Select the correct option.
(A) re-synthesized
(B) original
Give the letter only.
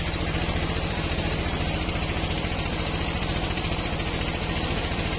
A